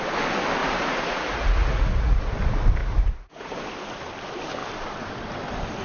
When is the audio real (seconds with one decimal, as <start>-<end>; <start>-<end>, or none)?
0.0-0.6; 2.3-2.8; 3.6-5.8